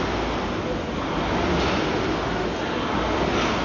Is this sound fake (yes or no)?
no